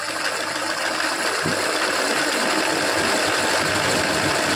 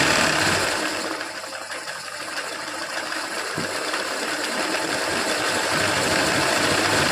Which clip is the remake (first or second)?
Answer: second